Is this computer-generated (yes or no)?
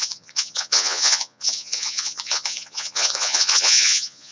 yes